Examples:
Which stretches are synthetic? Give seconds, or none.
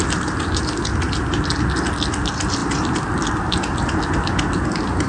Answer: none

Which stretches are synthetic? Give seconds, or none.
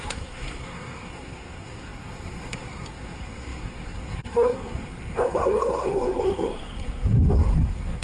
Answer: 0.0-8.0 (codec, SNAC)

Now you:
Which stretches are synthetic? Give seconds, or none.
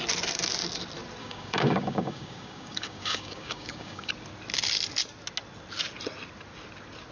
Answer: 1.2-4.1 (codec, DAC)